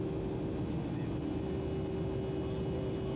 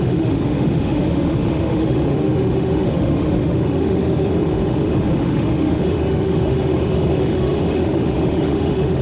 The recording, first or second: first